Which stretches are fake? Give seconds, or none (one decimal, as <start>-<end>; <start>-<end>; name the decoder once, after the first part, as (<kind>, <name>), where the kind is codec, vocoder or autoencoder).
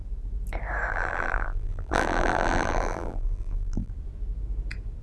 0.9-3.9 (vocoder, BigVGAN v2)